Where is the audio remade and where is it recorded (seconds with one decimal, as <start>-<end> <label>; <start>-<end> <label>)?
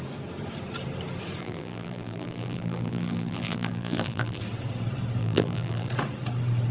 0.0-1.4 recorded; 1.4-4.4 remade; 4.4-5.2 recorded; 5.2-5.9 remade; 5.9-6.7 recorded